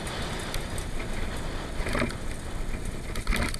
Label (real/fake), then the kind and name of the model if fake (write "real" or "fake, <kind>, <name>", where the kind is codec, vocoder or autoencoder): real